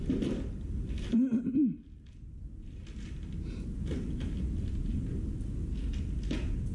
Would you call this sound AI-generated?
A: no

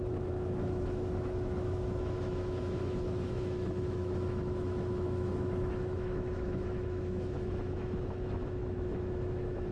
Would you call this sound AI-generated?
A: yes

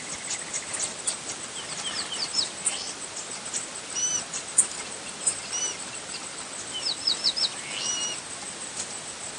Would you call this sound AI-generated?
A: no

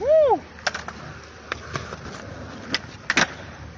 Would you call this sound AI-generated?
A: no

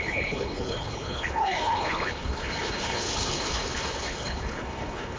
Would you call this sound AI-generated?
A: yes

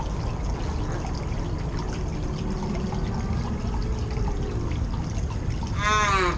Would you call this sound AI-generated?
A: no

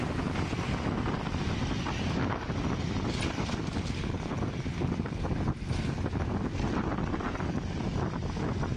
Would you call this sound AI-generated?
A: no